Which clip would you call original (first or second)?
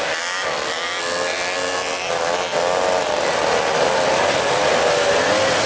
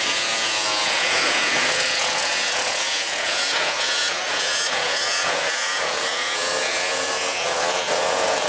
first